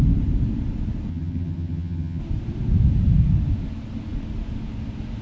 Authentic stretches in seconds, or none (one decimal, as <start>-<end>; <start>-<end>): 0.0-1.1; 2.2-5.2